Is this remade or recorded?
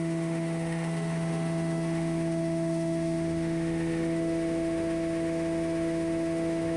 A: remade